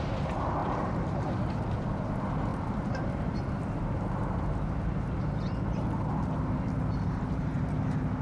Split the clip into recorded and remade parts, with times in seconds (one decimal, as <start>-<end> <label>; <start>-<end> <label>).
0.0-8.2 remade